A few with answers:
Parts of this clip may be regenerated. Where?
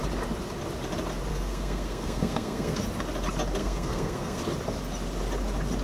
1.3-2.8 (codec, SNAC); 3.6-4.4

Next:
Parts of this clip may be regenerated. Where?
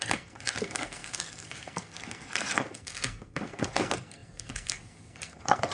0.0-5.7 (codec, SNAC)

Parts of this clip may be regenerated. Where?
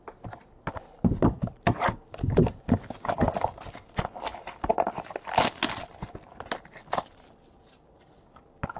none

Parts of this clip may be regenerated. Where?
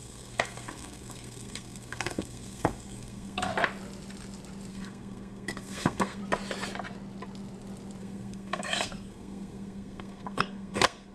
0.0-3.5 (codec, SNAC); 4.7-6.2; 8.0-11.1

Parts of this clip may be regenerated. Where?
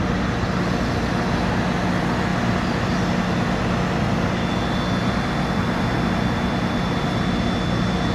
none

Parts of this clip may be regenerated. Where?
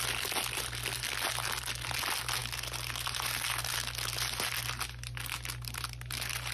none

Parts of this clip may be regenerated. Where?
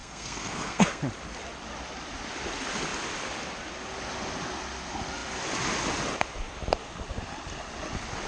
0.0-1.0 (codec, SNAC)